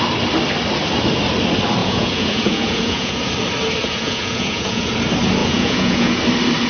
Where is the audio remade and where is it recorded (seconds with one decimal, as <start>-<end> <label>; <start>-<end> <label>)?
0.0-1.8 recorded; 1.8-3.2 remade; 3.2-3.8 recorded; 3.8-4.9 remade; 4.9-5.4 recorded; 5.4-6.2 remade; 6.2-6.7 recorded